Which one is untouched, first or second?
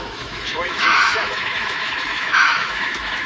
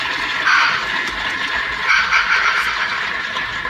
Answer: second